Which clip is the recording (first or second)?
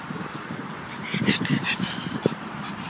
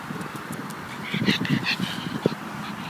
second